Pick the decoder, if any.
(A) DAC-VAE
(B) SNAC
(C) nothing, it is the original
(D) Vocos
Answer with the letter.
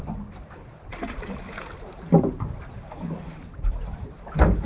C